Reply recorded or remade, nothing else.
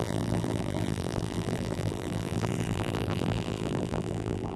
remade